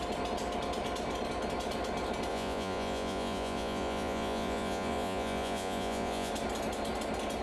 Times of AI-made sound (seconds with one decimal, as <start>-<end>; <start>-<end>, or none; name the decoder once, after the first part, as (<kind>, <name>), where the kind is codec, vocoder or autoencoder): 2.3-6.3 (vocoder, Vocos)